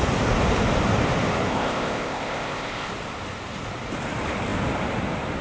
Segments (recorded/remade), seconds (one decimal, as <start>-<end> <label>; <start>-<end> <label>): 0.0-1.5 recorded; 1.5-2.9 remade; 2.9-5.4 recorded